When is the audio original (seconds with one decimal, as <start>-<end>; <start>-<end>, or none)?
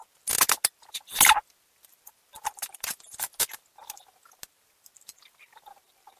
0.0-6.2